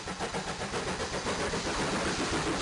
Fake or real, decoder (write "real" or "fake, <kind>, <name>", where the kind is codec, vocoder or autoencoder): real